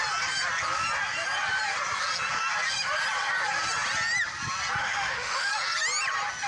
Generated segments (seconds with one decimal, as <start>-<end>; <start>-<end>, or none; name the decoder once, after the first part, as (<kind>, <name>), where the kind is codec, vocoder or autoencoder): 4.8-5.5 (autoencoder, DAC-VAE)